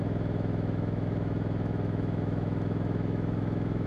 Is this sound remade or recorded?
remade